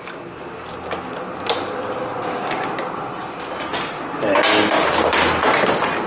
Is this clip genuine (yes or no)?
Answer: yes